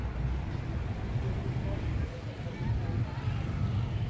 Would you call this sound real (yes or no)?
yes